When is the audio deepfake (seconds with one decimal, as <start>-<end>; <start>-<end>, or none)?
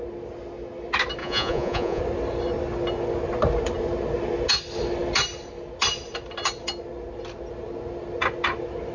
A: 1.2-2.0